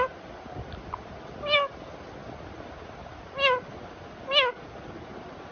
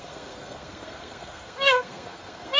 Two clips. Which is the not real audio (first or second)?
second